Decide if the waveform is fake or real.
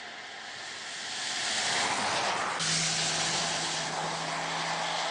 real